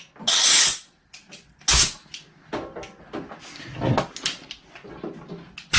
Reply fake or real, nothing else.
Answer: real